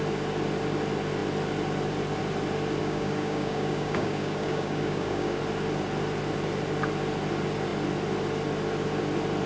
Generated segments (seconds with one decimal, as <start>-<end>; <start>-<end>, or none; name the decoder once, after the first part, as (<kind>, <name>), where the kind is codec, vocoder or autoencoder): 2.8-5.4 (codec, DAC)